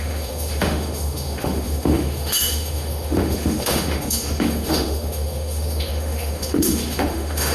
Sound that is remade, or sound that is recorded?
remade